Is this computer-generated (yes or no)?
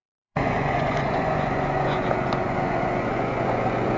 yes